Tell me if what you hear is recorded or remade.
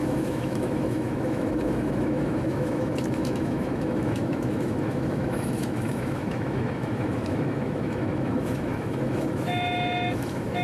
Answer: remade